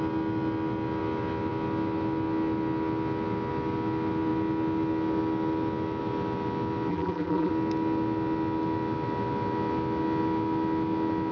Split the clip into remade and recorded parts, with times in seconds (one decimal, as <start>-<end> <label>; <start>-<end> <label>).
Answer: 0.0-6.9 recorded; 6.9-7.5 remade; 7.5-11.3 recorded